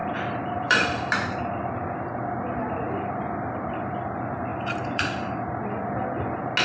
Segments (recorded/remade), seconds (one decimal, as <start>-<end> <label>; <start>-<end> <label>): 0.0-1.5 remade; 1.5-4.5 recorded; 4.5-5.7 remade; 5.7-6.6 recorded